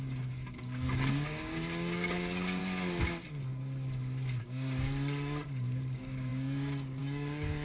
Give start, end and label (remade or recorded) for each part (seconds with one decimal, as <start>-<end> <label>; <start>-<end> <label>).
0.0-2.6 remade; 2.6-4.4 recorded; 4.4-7.6 remade